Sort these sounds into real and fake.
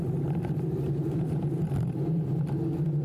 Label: real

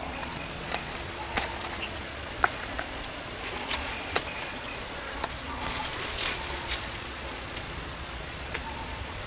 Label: fake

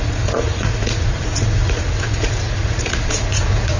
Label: fake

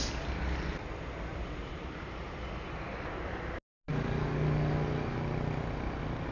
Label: real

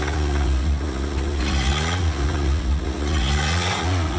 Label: fake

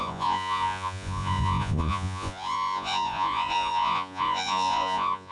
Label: fake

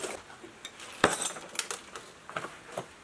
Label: real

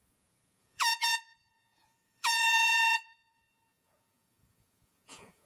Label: fake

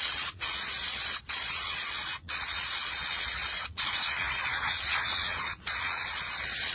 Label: fake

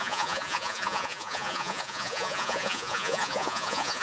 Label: fake